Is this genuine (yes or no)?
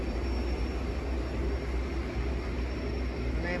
yes